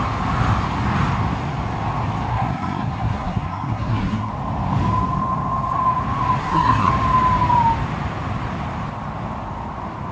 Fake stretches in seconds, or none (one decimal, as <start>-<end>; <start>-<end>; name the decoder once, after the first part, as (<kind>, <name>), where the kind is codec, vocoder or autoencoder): 2.3-4.3 (codec, SNAC); 6.4-6.9